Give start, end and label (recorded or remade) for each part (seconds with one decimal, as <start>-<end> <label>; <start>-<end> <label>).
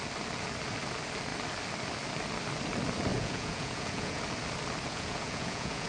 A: 0.0-3.1 recorded; 3.1-4.2 remade; 4.2-4.9 recorded; 4.9-5.9 remade